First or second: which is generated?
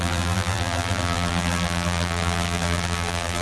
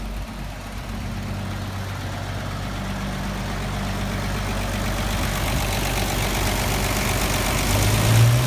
first